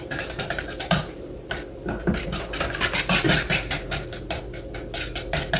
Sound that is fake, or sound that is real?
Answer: real